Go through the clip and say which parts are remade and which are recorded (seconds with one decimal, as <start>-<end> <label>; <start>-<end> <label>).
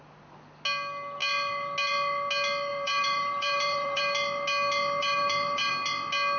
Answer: 0.0-2.7 recorded; 2.7-4.0 remade; 4.0-5.0 recorded; 5.0-5.7 remade; 5.7-6.4 recorded